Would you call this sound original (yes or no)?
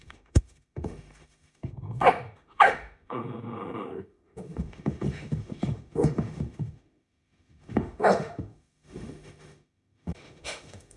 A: no